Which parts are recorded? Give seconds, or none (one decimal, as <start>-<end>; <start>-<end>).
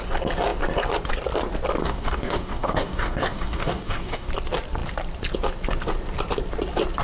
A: 0.0-1.8; 4.3-7.0